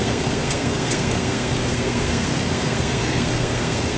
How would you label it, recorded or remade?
remade